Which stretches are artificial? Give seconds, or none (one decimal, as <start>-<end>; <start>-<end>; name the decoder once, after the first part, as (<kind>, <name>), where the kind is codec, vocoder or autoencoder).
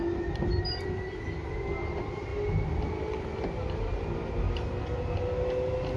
none